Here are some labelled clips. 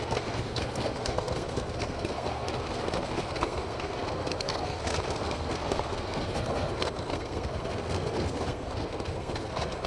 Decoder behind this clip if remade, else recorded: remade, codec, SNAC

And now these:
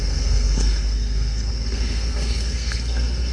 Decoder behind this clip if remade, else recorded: remade, codec, SNAC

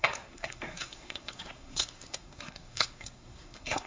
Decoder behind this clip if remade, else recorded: remade, codec, SNAC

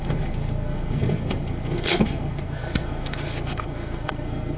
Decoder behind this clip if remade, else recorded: remade, codec, SNAC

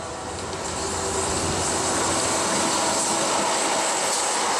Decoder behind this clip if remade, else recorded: recorded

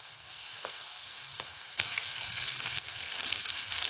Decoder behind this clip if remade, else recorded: remade, codec, SNAC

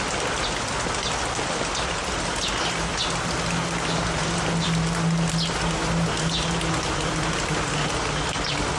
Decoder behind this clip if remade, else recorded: recorded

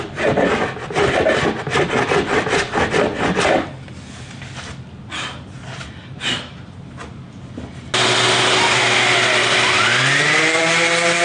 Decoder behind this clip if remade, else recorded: recorded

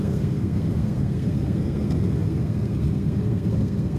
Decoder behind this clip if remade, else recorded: remade, codec, SNAC